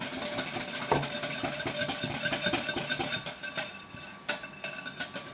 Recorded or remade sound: recorded